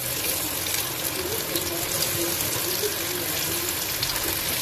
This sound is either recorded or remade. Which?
recorded